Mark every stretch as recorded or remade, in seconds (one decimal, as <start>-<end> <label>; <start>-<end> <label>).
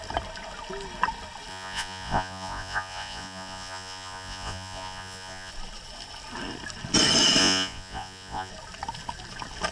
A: 0.0-1.5 recorded; 1.5-5.5 remade; 5.5-7.4 recorded; 7.4-8.5 remade; 8.5-9.7 recorded